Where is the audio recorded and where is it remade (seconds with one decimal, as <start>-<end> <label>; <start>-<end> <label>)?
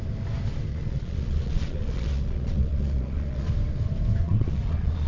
0.0-0.7 recorded; 0.7-3.5 remade; 3.5-4.2 recorded; 4.2-5.1 remade